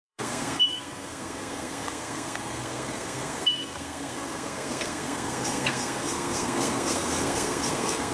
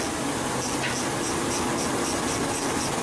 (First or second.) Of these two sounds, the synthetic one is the first